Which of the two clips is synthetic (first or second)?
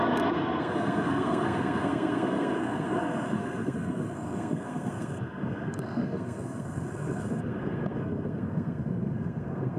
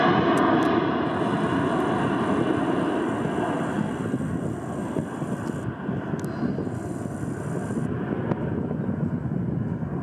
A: first